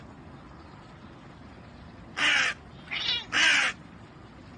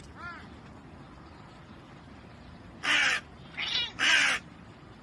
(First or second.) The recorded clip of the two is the first